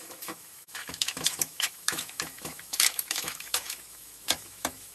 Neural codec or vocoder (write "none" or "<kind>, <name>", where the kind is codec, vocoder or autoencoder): autoencoder, DAC-VAE